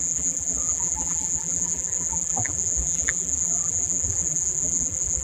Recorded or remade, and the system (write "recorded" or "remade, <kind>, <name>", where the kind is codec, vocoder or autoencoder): remade, vocoder, BigVGAN v2